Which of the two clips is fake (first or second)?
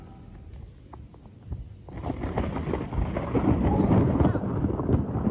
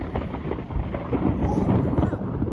second